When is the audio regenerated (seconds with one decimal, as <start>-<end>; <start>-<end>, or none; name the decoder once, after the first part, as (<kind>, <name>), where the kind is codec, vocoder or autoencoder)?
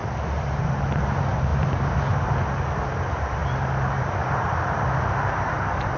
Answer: 0.0-1.0 (vocoder, BigVGAN v2); 1.5-2.4; 3.4-5.5